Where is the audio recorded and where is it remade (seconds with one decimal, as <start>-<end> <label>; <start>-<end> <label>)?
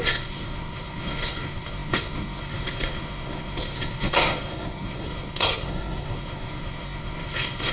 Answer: 0.0-7.7 remade